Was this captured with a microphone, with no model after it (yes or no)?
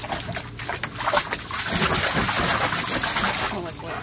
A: yes